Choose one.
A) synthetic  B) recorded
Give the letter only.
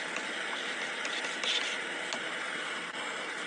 B